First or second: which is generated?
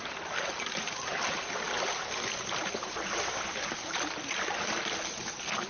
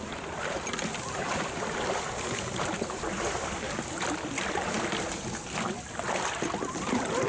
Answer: second